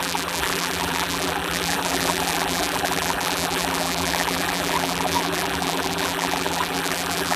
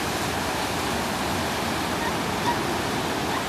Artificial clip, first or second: first